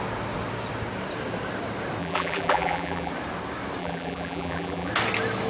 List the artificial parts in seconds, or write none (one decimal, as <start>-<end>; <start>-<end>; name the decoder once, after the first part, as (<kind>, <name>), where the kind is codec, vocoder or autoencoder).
2.0-3.1 (vocoder, BigVGAN v2); 3.8-4.9